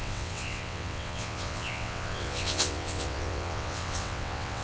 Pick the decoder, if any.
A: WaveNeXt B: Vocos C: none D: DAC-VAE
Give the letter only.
A